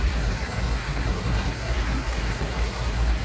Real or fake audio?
fake